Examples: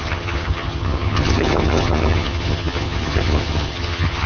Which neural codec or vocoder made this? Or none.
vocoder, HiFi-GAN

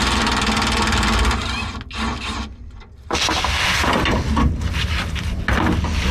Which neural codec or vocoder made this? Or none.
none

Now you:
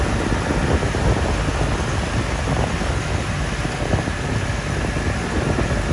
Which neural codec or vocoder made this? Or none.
none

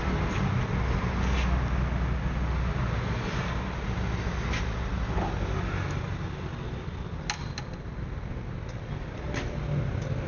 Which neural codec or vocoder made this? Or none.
none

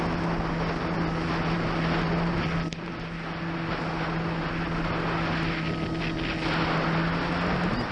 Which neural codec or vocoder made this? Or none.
none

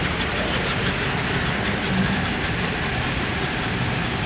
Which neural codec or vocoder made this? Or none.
none